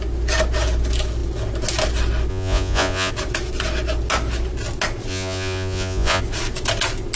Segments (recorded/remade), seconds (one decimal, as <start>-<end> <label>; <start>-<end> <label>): 0.0-2.3 recorded; 2.3-3.1 remade; 3.1-5.1 recorded; 5.1-6.2 remade; 6.2-7.2 recorded